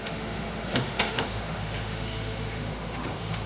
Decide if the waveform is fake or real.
fake